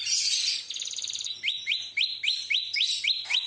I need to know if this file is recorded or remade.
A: recorded